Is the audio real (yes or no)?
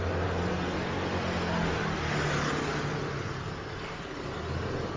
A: yes